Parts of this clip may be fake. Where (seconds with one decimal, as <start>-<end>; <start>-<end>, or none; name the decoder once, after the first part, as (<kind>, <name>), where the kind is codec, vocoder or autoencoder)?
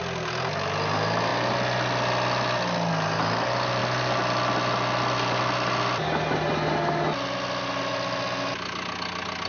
none